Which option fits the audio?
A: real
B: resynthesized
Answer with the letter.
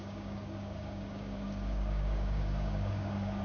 B